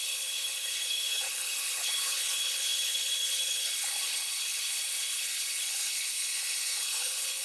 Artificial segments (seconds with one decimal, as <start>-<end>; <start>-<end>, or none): 0.0-7.4